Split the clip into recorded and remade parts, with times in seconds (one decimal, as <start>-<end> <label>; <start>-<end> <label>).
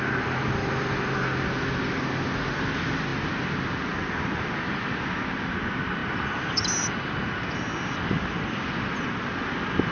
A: 0.0-9.9 recorded